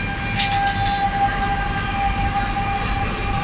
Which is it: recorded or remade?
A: recorded